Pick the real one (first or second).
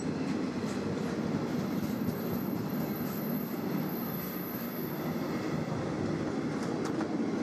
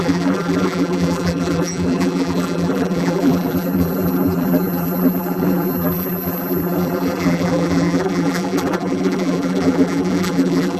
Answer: first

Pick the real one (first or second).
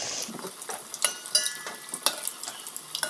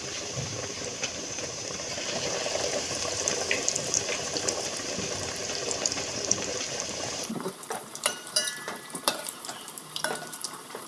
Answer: first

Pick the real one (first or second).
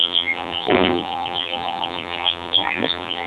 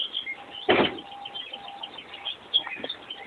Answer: second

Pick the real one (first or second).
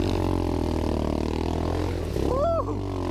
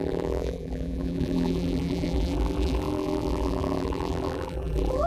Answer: first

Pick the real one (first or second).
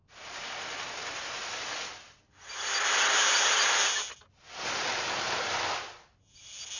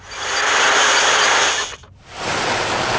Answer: first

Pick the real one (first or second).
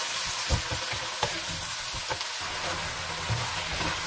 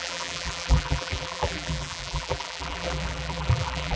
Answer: first